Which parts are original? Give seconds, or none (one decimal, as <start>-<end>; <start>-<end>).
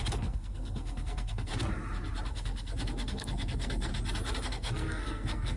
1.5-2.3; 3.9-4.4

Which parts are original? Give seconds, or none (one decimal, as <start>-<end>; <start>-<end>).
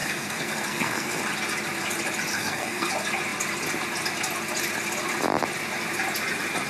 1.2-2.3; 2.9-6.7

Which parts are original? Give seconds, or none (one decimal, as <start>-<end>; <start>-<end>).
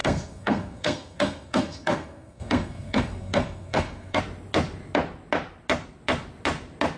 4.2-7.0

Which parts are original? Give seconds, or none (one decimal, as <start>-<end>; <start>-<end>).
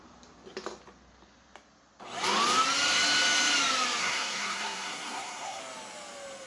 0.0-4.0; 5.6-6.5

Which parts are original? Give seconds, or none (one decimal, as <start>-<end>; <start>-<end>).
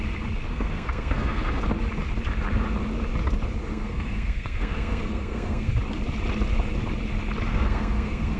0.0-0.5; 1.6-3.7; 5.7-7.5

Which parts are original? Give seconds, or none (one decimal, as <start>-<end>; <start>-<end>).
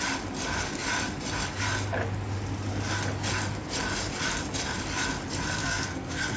0.0-5.6